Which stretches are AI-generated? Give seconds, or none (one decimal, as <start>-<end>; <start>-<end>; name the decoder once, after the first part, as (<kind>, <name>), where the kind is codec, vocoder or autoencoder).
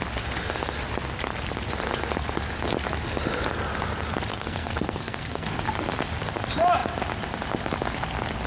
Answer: 4.3-5.5 (codec, SNAC)